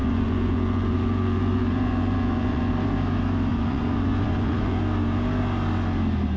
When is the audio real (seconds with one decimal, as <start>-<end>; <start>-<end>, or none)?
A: 2.7-3.5; 4.8-6.4

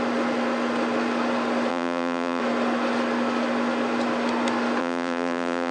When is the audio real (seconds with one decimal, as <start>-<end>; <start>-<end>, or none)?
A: 0.0-1.7; 2.4-4.8

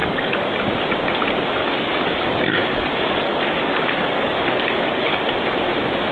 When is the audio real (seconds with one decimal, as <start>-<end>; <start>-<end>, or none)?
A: 0.6-1.6; 5.3-6.1

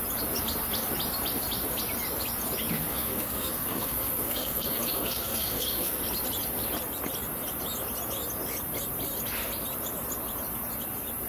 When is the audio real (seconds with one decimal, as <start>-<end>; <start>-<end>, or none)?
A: 0.0-2.9; 6.0-11.3

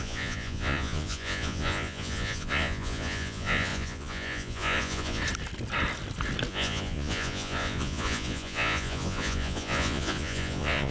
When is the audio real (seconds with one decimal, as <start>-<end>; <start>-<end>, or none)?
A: 5.2-6.5

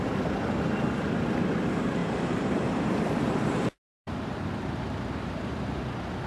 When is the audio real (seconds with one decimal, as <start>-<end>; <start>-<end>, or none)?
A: 0.0-2.0; 5.8-6.3

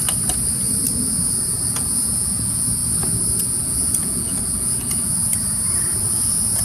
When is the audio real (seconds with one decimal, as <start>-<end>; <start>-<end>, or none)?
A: 0.0-1.7; 2.8-3.4; 5.3-6.1